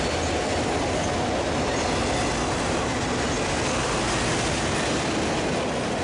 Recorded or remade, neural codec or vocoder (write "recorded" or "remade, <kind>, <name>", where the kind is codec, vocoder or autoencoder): recorded